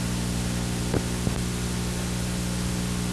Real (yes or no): yes